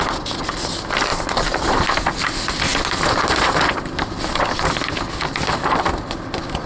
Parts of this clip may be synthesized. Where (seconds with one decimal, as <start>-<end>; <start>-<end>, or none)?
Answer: 1.1-2.3